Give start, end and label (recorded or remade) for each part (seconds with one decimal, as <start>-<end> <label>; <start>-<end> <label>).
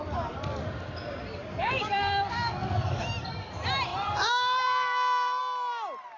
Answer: 0.0-1.4 recorded; 1.4-3.1 remade; 3.1-6.2 recorded